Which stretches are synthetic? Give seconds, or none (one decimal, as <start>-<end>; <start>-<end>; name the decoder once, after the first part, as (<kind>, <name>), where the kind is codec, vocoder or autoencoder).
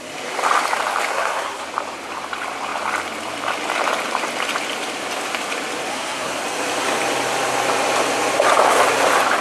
1.1-1.6 (codec, SNAC); 5.9-6.4